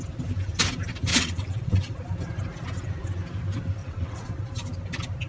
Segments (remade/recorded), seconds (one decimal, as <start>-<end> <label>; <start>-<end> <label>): 0.0-1.1 recorded; 1.1-2.0 remade; 2.0-3.8 recorded; 3.8-4.3 remade; 4.3-5.3 recorded